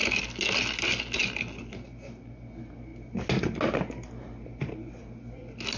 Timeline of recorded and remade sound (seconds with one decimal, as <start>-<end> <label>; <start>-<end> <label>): 0.0-5.8 recorded